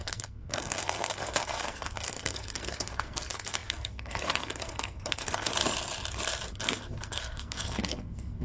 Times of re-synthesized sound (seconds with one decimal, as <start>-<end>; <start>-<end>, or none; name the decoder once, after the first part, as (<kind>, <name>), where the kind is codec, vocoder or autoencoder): 0.0-5.5 (codec, SNAC); 6.5-8.4